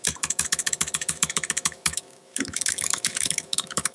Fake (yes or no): yes